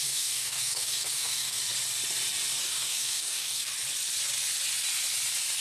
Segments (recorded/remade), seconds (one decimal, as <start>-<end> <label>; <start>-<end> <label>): 0.0-1.6 remade; 1.6-2.6 recorded; 2.6-3.7 remade; 3.7-5.6 recorded